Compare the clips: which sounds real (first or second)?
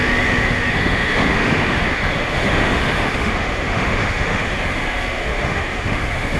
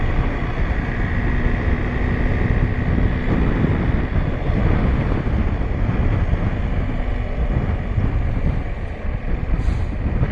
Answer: second